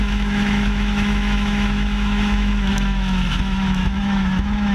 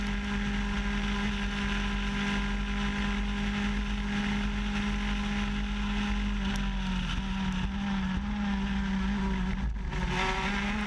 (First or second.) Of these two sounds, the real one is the second